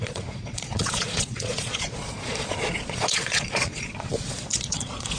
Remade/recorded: remade